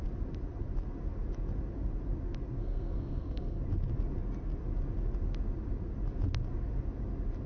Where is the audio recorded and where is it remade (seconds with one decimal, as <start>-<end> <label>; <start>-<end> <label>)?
0.0-2.6 recorded; 2.6-3.6 remade; 3.6-7.5 recorded